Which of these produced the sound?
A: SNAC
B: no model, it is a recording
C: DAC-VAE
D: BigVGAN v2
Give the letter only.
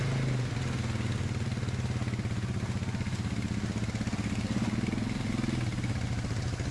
B